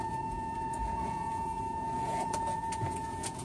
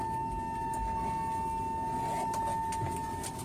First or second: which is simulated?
first